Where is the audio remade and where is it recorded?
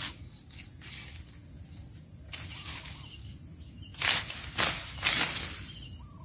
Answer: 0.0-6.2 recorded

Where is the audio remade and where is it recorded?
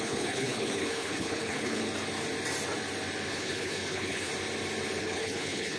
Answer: 0.0-1.9 remade; 1.9-3.3 recorded; 3.3-4.3 remade; 4.3-5.0 recorded; 5.0-5.8 remade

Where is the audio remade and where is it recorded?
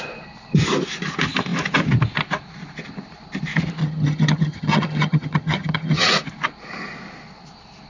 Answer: 0.0-3.8 recorded; 3.8-6.1 remade; 6.1-7.9 recorded